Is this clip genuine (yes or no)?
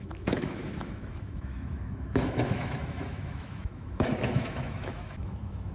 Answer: no